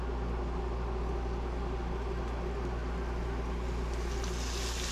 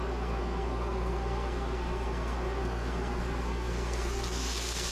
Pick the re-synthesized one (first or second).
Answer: second